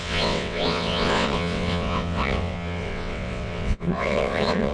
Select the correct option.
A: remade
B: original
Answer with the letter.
A